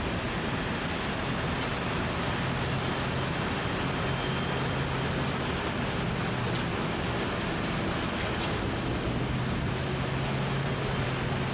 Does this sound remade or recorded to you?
recorded